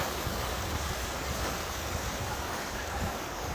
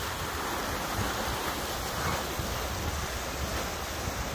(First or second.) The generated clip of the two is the first